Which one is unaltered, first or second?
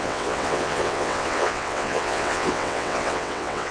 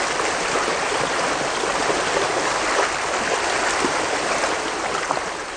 second